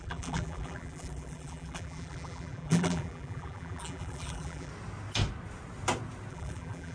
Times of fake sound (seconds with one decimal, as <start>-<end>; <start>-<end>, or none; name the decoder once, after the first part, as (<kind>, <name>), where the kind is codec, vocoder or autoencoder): 0.0-4.7 (vocoder, BigVGAN v2); 6.3-6.9